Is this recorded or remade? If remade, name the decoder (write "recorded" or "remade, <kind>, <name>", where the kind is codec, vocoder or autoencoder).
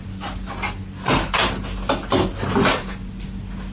recorded